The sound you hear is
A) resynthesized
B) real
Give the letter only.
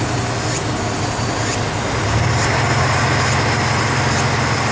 B